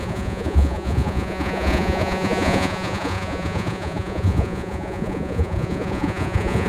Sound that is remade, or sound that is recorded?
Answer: remade